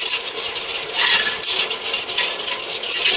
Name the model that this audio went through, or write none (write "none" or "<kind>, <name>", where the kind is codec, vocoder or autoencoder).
none